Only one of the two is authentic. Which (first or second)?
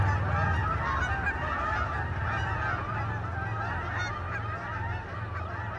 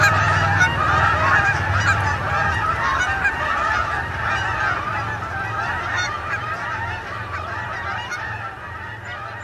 first